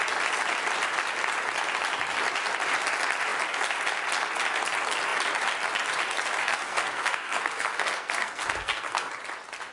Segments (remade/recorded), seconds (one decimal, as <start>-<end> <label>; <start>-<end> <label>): 0.0-6.4 recorded; 6.4-9.1 remade; 9.1-9.7 recorded